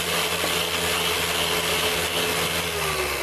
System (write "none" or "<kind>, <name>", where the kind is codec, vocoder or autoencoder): none